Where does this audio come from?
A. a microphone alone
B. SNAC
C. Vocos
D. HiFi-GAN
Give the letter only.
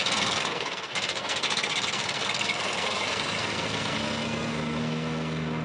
B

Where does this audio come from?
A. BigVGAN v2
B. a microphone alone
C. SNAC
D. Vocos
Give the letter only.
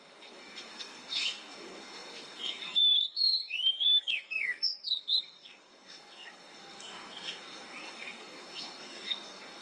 C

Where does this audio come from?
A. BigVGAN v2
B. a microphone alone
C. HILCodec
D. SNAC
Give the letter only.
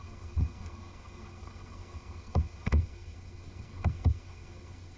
D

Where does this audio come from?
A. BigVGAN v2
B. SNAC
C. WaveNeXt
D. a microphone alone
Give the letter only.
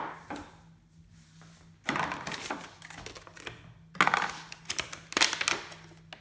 D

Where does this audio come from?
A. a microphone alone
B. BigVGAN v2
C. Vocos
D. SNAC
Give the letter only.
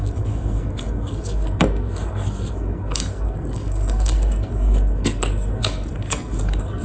D